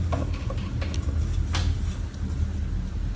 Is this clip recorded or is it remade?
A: recorded